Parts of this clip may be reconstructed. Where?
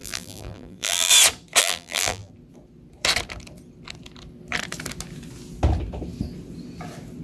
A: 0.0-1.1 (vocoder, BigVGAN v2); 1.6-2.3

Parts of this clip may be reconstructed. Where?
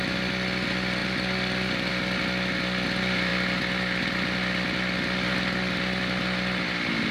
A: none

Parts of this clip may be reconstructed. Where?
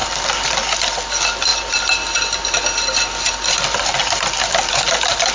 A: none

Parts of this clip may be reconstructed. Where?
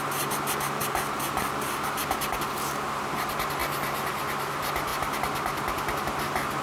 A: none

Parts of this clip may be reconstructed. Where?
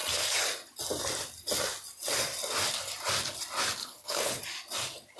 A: 3.8-4.4 (codec, HILCodec)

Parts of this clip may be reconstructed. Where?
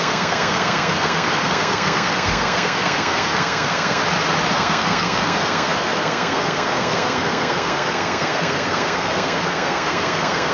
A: 0.0-4.0 (codec, SNAC); 4.5-10.5